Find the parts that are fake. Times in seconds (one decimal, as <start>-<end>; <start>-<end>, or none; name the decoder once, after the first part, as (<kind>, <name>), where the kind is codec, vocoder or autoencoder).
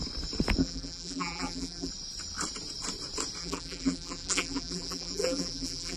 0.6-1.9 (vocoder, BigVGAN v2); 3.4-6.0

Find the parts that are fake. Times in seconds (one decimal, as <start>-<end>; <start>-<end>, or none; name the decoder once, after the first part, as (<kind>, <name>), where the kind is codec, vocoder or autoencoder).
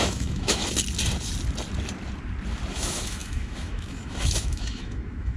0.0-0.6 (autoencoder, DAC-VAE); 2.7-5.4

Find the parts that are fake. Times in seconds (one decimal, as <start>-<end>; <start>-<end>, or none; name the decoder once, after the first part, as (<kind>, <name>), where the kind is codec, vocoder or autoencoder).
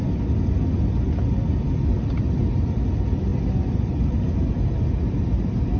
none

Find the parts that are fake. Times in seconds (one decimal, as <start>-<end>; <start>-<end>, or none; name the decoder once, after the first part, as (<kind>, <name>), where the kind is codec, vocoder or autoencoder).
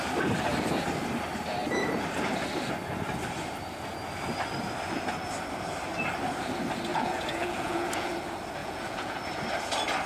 6.9-8.1 (vocoder, Vocos); 8.6-9.2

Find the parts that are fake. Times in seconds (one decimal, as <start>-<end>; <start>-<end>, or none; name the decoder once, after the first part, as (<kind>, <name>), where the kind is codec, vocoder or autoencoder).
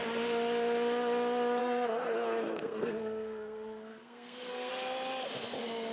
1.6-4.7 (codec, SNAC)